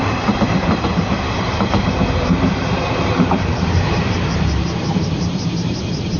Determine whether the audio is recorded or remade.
remade